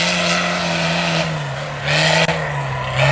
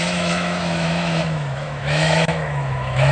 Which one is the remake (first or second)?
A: second